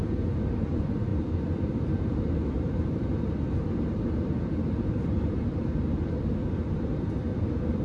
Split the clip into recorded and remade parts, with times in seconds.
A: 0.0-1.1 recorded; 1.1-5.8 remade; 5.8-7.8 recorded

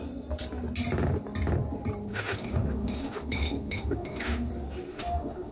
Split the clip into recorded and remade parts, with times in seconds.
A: 0.0-2.1 recorded; 2.1-4.5 remade; 4.5-4.9 recorded; 4.9-5.5 remade

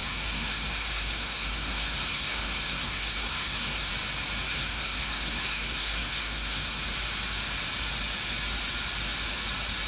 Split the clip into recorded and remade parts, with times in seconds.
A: 0.0-3.9 remade; 3.9-4.4 recorded; 4.4-6.8 remade; 6.8-9.9 recorded

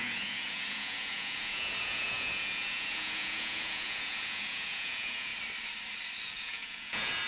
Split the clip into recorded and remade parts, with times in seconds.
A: 0.0-5.3 remade; 5.3-6.2 recorded; 6.2-7.3 remade

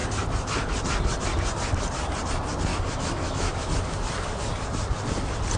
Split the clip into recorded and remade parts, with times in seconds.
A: 0.0-2.7 recorded; 2.7-3.7 remade; 3.7-5.6 recorded

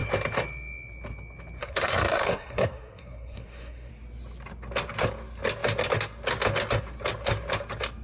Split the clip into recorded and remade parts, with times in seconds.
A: 0.0-1.6 recorded; 1.6-3.9 remade; 3.9-8.0 recorded